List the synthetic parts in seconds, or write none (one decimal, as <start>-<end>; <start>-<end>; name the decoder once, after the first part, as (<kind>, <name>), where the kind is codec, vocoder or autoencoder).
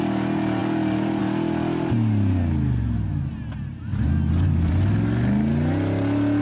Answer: none